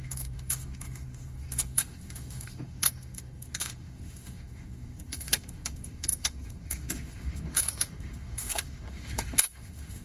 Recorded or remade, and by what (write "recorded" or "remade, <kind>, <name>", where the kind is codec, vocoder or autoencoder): remade, autoencoder, DAC-VAE